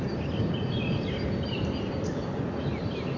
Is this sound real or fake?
real